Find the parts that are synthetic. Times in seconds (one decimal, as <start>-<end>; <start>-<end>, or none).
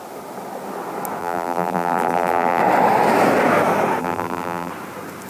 1.2-2.6; 4.0-4.7